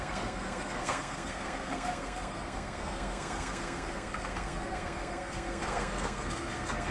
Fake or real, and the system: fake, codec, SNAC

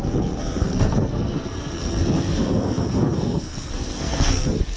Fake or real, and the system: fake, codec, SNAC